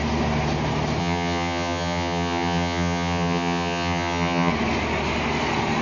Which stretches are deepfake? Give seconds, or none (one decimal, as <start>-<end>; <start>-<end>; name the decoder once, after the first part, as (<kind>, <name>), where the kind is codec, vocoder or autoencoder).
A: 1.0-4.5 (vocoder, HiFi-GAN)